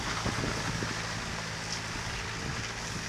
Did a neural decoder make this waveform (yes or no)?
no